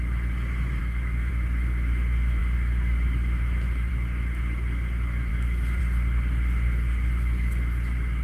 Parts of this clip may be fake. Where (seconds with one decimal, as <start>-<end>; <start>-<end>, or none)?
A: 0.8-1.3; 5.3-5.8